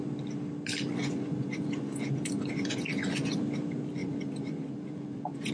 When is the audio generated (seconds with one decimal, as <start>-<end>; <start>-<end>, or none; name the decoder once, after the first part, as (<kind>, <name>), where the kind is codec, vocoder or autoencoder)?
1.0-3.4 (vocoder, Vocos); 4.0-5.5